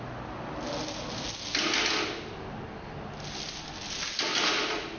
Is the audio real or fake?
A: real